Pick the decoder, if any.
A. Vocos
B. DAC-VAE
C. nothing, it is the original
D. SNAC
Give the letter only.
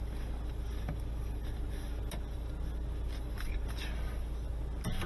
C